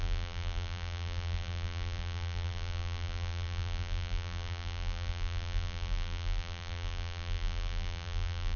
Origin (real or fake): fake